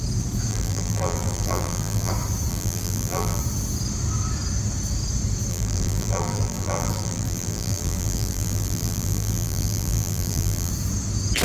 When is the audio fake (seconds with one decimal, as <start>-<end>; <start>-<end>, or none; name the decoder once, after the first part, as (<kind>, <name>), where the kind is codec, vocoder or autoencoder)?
0.5-2.1 (vocoder, BigVGAN v2); 2.5-3.4; 5.5-10.7